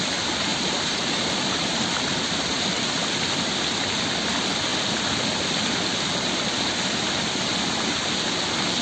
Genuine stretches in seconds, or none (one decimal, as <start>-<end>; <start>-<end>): 0.0-0.5; 2.6-8.8